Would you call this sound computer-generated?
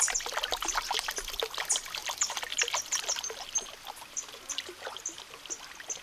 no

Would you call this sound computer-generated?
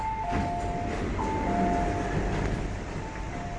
no